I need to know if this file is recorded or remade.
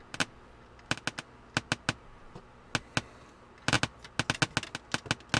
recorded